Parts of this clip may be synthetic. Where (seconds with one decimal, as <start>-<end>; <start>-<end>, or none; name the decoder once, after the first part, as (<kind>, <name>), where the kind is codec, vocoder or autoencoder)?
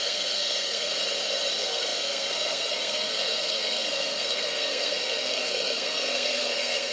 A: 0.0-0.9 (codec, SNAC); 1.5-6.9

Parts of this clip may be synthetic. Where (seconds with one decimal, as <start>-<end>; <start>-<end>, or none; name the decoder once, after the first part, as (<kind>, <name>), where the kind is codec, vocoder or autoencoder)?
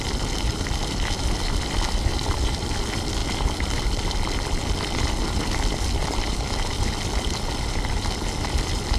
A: none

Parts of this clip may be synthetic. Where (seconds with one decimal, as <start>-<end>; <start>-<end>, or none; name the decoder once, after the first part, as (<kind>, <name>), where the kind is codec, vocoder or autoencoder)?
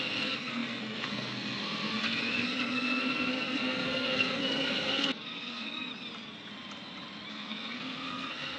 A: 0.0-5.9 (codec, SNAC); 7.3-8.6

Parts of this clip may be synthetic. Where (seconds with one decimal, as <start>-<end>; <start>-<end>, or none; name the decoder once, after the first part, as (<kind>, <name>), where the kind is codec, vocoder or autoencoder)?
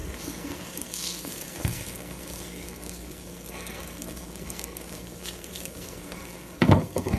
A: 0.0-7.2 (codec, SNAC)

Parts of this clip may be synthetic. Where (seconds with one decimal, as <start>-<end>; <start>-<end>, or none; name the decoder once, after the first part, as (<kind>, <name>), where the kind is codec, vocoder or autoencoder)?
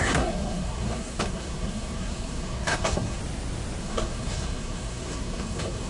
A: 0.0-3.2 (codec, SNAC); 3.8-5.9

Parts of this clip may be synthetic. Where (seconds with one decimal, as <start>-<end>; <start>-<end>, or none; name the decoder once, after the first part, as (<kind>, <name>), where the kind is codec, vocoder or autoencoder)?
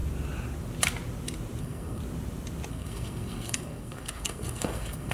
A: 1.6-2.0 (codec, SNAC); 2.7-5.1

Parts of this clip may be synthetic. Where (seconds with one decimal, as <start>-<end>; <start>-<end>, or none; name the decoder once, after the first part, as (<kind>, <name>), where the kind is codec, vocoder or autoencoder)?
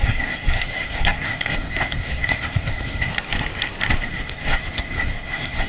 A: 0.0-3.1 (codec, SNAC); 4.0-5.7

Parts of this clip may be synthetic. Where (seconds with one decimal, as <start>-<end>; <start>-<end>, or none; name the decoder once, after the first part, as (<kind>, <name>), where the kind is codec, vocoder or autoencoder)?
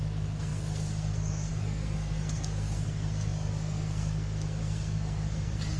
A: 0.0-5.8 (codec, SNAC)